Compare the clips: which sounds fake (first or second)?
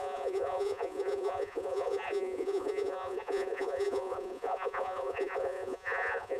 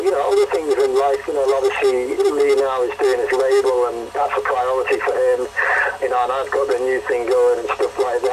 first